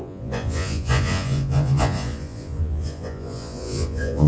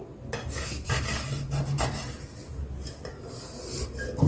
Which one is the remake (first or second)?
first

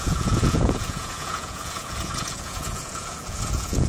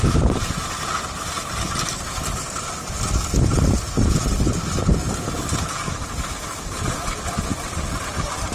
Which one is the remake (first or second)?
first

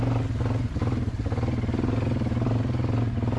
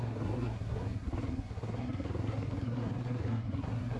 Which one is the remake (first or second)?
second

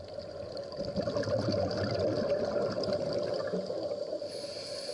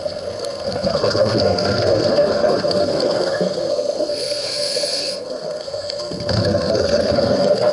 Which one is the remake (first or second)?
second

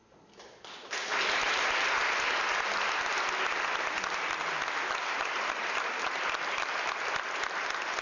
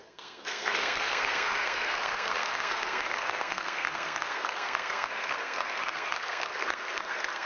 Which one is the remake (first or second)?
second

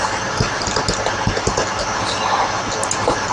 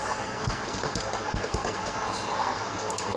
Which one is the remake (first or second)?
second